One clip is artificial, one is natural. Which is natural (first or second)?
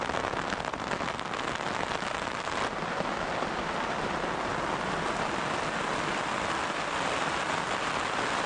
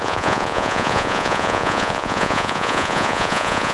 first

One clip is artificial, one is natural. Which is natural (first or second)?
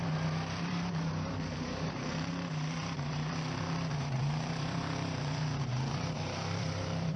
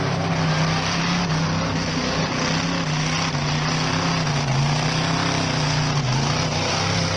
second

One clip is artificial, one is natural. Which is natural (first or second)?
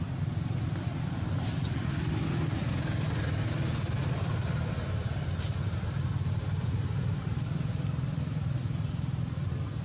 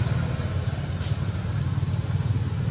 second